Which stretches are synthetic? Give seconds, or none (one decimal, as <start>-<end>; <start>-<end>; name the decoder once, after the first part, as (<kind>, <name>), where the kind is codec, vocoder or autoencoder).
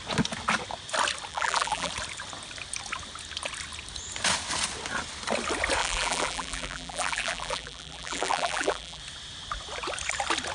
1.3-1.9 (vocoder, BigVGAN v2); 5.8-9.0